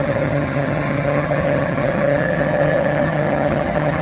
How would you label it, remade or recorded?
remade